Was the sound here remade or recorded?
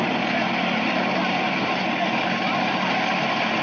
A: recorded